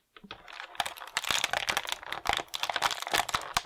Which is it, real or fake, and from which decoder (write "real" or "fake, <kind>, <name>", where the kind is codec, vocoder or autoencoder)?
real